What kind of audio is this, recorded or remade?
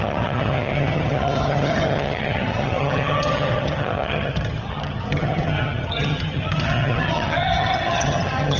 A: remade